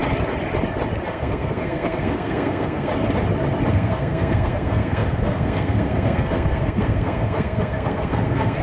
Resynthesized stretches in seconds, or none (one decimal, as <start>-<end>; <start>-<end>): 1.1-2.9; 3.7-8.6